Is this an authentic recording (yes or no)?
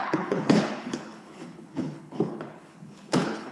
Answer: no